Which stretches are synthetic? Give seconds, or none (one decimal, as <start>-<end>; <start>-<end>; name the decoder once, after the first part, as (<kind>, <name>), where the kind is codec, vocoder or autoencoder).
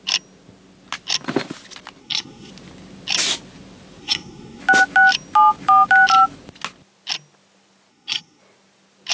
2.0-2.5 (codec, SNAC); 4.0-4.6; 7.9-8.4